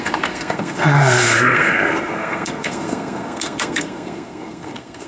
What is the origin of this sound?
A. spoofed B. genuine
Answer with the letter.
A